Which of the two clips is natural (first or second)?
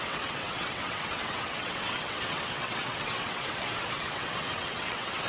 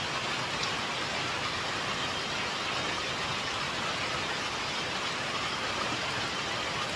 second